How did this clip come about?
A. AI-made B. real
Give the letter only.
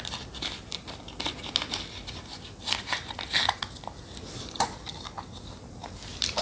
B